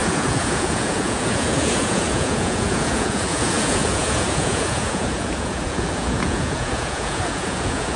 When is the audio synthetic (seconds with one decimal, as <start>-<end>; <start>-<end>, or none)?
0.0-8.0